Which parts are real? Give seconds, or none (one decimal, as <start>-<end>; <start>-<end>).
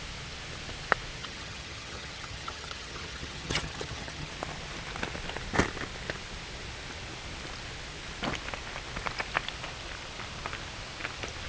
0.0-1.2; 4.3-11.5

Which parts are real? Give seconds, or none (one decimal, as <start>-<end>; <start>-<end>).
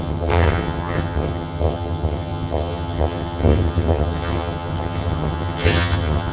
none